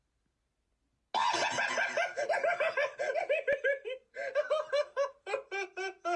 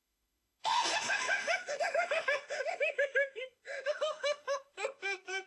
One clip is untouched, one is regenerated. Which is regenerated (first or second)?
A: second